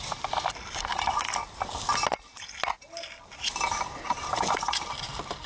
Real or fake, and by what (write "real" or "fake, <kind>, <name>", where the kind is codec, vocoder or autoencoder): real